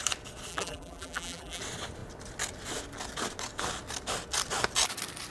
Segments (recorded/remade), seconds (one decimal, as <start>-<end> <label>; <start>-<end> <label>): 0.0-0.5 recorded; 0.5-1.6 remade; 1.6-5.3 recorded